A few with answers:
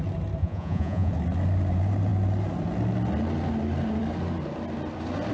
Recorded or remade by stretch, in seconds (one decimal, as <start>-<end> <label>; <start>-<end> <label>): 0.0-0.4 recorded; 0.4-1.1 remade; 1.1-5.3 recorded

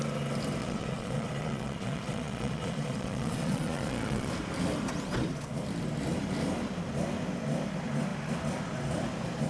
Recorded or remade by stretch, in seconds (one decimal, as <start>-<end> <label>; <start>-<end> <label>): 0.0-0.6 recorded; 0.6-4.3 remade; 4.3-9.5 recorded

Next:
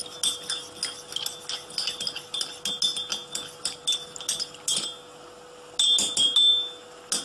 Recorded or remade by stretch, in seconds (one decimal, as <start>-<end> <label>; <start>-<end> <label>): 0.0-7.2 recorded